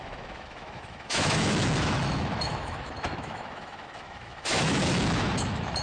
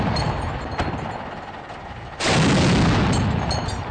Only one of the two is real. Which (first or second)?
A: second